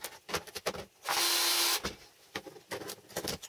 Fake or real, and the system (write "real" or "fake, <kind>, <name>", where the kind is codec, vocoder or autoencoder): real